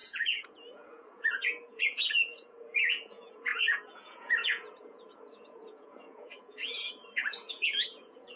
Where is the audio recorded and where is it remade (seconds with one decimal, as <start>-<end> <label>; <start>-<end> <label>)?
0.0-8.4 remade